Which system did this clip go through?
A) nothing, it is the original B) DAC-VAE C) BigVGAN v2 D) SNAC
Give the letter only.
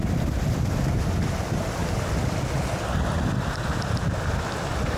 A